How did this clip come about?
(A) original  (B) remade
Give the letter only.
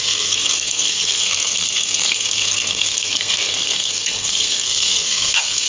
B